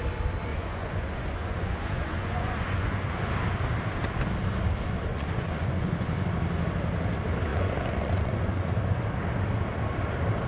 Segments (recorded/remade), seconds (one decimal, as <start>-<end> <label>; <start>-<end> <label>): 0.0-0.5 recorded; 0.5-3.3 remade; 3.3-5.1 recorded; 5.1-6.3 remade; 6.3-7.5 recorded; 7.5-8.7 remade; 8.7-10.5 recorded